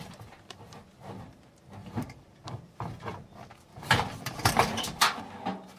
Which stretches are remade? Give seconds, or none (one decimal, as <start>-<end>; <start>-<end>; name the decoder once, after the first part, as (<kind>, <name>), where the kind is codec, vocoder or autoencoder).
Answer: 1.8-5.2 (vocoder, BigVGAN v2)